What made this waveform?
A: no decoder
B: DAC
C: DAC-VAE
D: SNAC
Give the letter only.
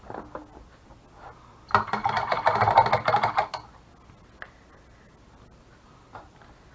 A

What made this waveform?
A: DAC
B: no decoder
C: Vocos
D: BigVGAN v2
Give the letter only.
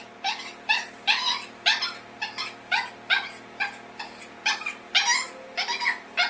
B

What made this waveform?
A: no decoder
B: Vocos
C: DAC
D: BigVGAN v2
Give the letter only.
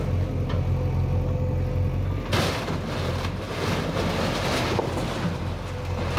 A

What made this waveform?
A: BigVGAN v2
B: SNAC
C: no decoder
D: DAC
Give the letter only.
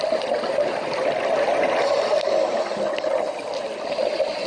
C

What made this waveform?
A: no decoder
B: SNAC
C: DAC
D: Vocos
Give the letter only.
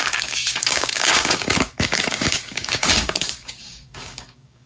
C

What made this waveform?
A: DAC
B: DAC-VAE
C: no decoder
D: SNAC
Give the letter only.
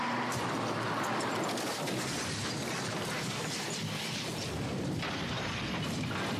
C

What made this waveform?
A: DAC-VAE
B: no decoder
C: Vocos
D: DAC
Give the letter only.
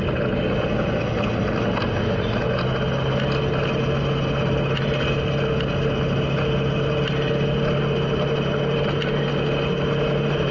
B